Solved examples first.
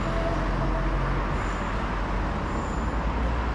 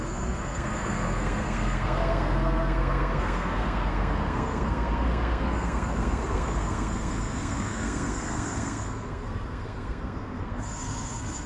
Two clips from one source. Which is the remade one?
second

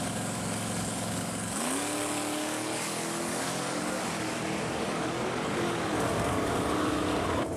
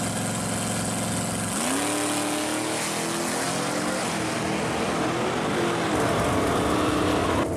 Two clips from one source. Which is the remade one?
first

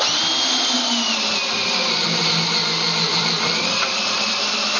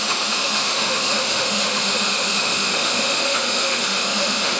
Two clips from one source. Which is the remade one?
second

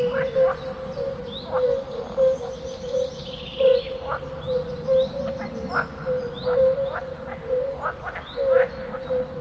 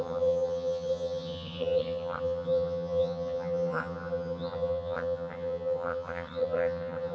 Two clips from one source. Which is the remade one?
second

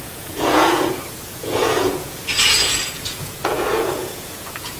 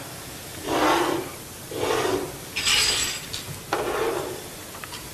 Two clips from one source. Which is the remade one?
first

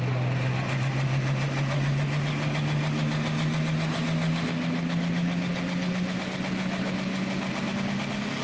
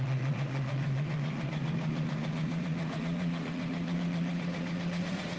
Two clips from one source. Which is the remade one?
second